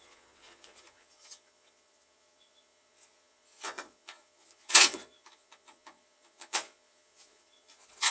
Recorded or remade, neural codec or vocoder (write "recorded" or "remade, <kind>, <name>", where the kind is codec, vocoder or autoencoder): remade, vocoder, Vocos